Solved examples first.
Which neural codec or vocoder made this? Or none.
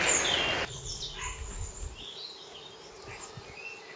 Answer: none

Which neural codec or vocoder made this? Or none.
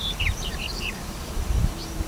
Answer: vocoder, BigVGAN v2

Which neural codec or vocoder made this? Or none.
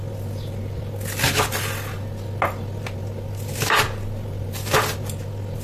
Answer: none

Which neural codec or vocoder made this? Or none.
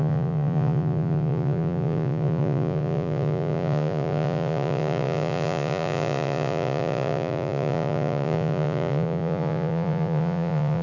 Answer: vocoder, Vocos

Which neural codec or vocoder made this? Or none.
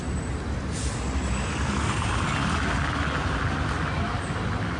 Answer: none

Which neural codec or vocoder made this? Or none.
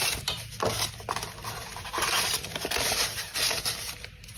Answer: none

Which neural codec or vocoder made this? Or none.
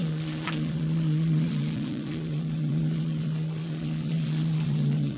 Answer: vocoder, Vocos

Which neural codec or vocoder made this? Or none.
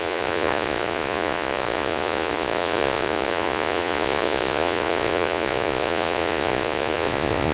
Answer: vocoder, Vocos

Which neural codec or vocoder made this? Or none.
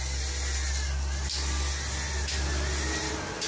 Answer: none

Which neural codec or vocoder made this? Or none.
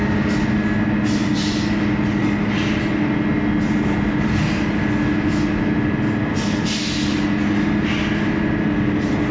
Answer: none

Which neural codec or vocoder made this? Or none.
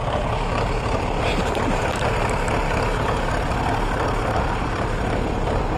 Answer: vocoder, BigVGAN v2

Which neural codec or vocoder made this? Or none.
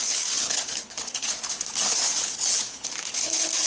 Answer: codec, HILCodec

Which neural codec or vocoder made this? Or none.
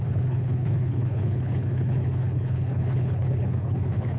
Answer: codec, HILCodec